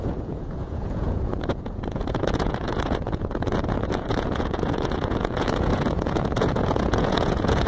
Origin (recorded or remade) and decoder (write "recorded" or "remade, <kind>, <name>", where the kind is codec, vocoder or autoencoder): remade, vocoder, Vocos